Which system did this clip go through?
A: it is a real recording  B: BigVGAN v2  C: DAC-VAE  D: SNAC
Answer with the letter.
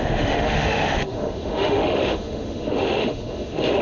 C